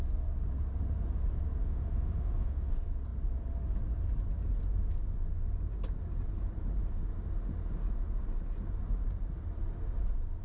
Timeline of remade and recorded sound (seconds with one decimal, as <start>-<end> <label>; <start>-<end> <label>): 0.0-1.6 recorded; 1.6-2.7 remade; 2.7-10.4 recorded